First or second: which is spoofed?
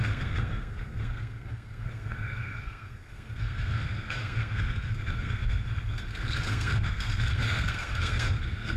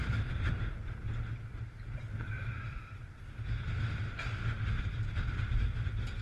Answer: first